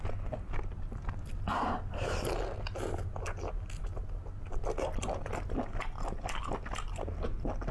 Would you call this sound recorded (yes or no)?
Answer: yes